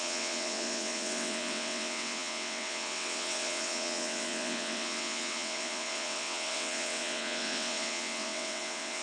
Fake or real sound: fake